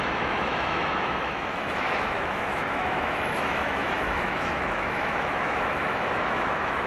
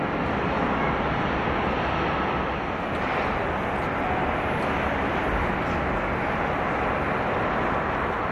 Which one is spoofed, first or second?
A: first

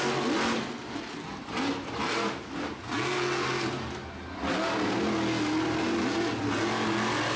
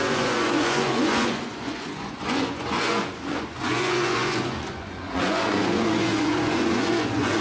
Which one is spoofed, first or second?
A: second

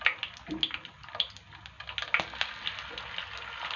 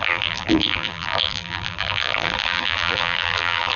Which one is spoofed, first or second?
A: second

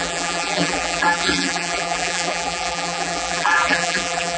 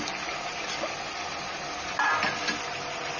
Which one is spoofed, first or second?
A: first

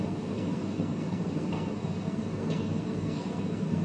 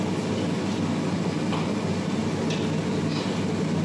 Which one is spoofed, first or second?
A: first